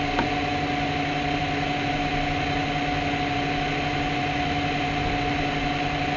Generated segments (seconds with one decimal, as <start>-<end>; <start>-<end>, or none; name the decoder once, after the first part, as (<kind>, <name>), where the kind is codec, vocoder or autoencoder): none